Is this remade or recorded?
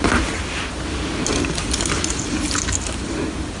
recorded